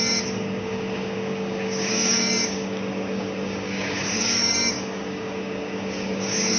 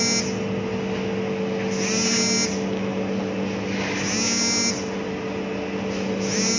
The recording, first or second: second